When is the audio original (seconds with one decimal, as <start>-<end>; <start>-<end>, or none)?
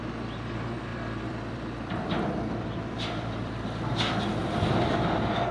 0.0-0.9; 3.6-4.4; 4.9-5.5